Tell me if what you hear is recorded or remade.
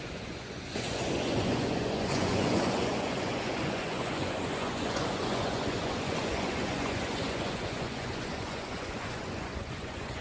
remade